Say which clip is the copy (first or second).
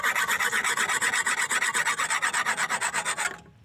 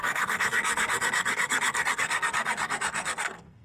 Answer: second